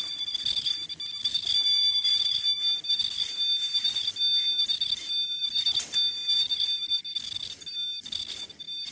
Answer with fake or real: real